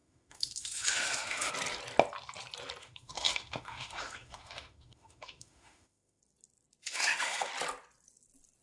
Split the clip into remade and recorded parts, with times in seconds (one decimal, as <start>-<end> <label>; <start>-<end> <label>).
0.0-1.5 remade; 1.5-2.8 recorded; 2.8-6.2 remade; 6.2-6.8 recorded; 6.8-7.5 remade; 7.5-8.6 recorded